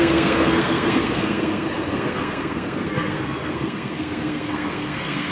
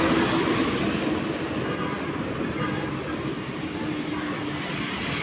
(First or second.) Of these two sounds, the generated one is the first